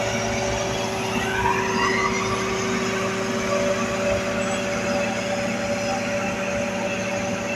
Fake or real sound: real